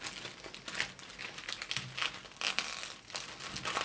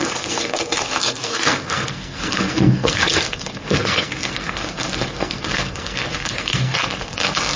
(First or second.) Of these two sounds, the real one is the first